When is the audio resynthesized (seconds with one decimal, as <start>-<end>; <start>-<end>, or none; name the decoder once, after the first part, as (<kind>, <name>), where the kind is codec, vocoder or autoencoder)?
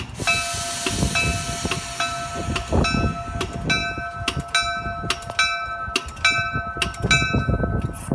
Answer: none